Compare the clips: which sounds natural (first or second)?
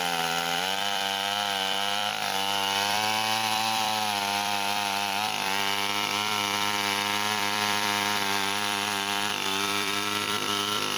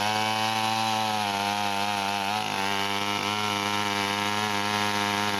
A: second